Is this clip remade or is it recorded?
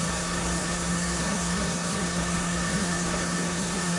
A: remade